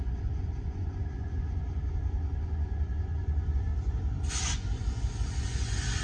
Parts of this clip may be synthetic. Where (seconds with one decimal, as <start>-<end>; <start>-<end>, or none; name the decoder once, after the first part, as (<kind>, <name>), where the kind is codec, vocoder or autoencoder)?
0.0-3.7 (vocoder, Vocos); 4.3-6.0

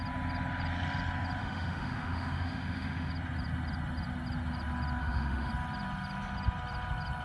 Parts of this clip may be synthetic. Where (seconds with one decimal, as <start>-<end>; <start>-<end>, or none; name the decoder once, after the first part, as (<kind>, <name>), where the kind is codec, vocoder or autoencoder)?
1.4-3.1 (autoencoder, DAC-VAE); 5.0-5.5

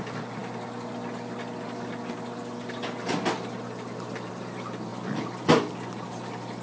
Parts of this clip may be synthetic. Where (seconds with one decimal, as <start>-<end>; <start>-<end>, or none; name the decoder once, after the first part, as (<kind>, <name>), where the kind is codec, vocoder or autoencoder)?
none